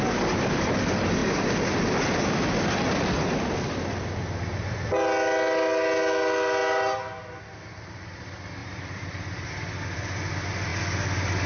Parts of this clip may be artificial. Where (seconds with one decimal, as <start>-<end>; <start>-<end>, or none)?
1.2-3.4; 8.6-10.2